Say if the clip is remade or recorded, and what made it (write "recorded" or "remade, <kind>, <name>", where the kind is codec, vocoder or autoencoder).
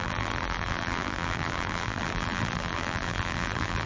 remade, vocoder, BigVGAN v2